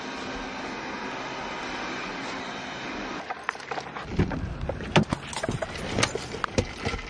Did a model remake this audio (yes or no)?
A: no